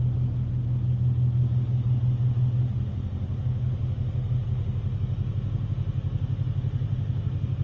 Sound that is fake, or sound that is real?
real